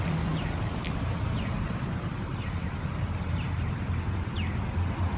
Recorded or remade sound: remade